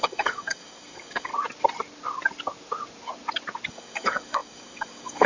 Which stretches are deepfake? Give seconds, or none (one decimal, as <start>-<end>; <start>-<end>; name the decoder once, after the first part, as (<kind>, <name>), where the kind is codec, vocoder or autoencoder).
0.0-1.3 (codec, DAC); 3.7-5.3